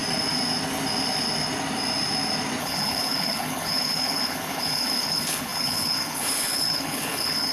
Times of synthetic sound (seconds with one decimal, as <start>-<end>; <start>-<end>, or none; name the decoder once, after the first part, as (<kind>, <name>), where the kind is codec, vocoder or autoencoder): 2.6-7.5 (codec, HILCodec)